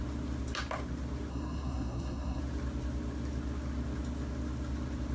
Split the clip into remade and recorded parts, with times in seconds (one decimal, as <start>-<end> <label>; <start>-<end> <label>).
0.0-1.3 recorded; 1.3-2.4 remade; 2.4-5.1 recorded